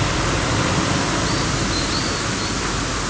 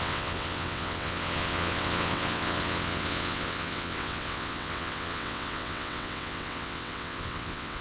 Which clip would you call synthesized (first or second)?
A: second